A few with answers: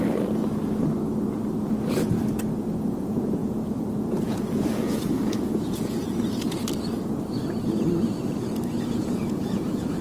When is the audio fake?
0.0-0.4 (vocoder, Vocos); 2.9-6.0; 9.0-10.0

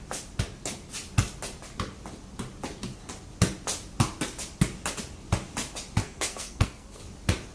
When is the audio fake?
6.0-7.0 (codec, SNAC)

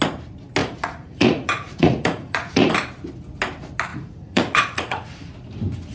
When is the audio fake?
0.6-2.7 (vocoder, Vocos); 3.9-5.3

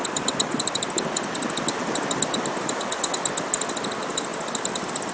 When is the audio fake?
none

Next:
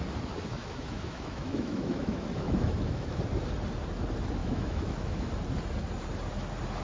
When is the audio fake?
0.5-3.2 (autoencoder, DAC-VAE); 4.4-5.3

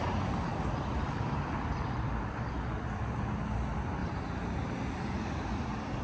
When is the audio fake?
0.5-3.2 (vocoder, BigVGAN v2)